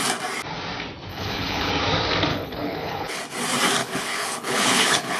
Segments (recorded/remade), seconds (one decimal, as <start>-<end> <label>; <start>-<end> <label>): 0.0-1.1 recorded; 1.1-1.7 remade; 1.7-2.3 recorded; 2.3-3.2 remade; 3.2-3.8 recorded; 3.8-5.2 remade